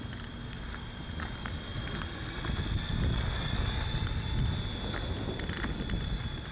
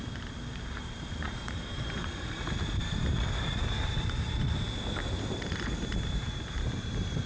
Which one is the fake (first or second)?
second